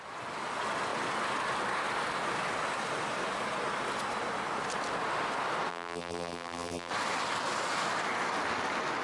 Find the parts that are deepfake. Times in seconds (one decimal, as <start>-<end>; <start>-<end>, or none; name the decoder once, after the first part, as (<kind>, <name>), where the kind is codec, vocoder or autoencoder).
5.7-6.9 (vocoder, BigVGAN v2)

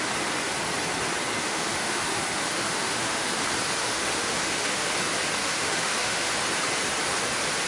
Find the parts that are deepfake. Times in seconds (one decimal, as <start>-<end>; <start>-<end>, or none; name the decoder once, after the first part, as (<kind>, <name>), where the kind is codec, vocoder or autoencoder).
1.4-3.4 (autoencoder, DAC-VAE); 3.8-4.9; 5.4-6.3

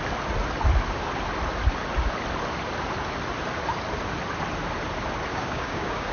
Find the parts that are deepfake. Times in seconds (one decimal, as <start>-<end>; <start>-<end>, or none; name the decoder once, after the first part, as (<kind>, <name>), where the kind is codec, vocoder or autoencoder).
5.3-6.1 (codec, DAC)

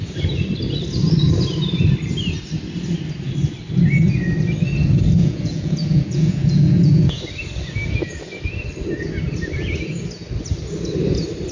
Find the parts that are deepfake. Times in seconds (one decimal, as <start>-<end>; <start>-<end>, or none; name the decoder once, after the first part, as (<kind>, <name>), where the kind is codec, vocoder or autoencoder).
5.2-7.2 (vocoder, Vocos)

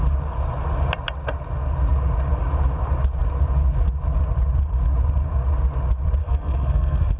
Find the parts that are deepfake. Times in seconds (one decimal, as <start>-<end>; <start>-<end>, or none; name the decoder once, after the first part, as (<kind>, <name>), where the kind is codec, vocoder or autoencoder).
6.2-7.2 (codec, SNAC)